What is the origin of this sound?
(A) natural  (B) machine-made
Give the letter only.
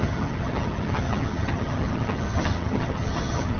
B